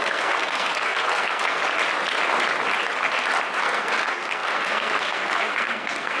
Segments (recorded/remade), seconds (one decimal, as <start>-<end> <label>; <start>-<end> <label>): 0.0-1.6 remade; 1.6-3.6 recorded; 3.6-6.2 remade